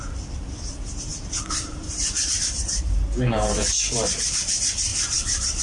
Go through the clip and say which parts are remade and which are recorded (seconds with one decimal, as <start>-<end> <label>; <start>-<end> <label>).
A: 0.0-1.1 recorded; 1.1-3.6 remade; 3.6-4.9 recorded; 4.9-5.6 remade